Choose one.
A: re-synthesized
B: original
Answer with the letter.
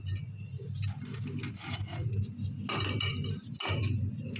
B